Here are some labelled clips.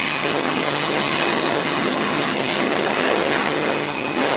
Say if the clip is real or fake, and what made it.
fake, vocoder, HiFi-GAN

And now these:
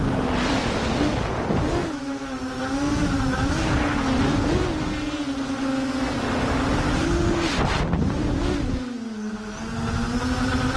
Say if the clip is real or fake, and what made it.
real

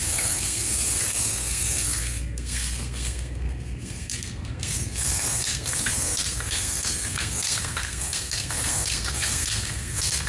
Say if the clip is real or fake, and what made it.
fake, codec, SNAC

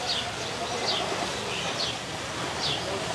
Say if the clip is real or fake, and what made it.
real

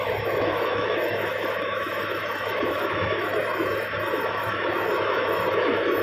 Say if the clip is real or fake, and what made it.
fake, autoencoder, DAC-VAE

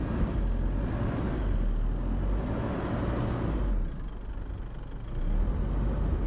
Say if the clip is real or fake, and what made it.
real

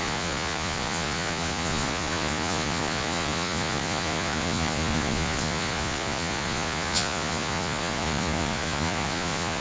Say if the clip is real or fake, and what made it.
fake, vocoder, Vocos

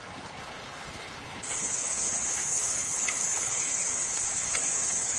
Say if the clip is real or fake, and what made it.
fake, codec, HILCodec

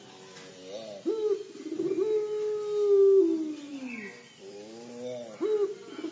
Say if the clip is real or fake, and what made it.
real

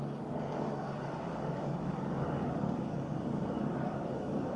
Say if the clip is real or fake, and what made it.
fake, codec, DAC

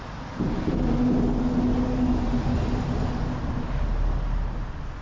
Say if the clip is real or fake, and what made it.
real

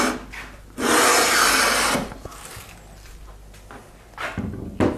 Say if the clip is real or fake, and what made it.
real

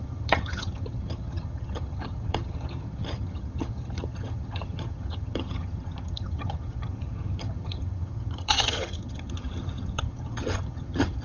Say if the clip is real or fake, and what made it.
fake, vocoder, HiFi-GAN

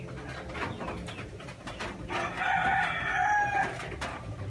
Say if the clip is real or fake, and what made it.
real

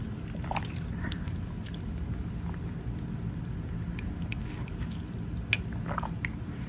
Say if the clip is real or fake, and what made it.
real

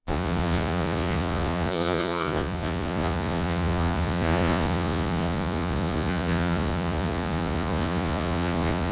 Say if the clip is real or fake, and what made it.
fake, vocoder, Vocos